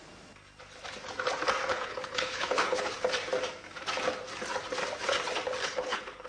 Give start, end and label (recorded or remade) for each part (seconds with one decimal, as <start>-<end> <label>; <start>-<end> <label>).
0.0-1.7 recorded; 1.7-3.1 remade; 3.1-5.6 recorded; 5.6-6.3 remade